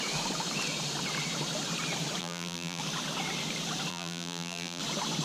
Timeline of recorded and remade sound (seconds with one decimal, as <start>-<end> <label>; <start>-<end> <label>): 0.0-2.2 recorded; 2.2-2.8 remade; 2.8-3.9 recorded; 3.9-4.8 remade; 4.8-5.2 recorded